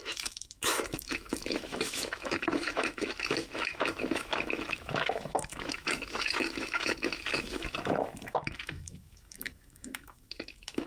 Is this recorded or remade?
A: remade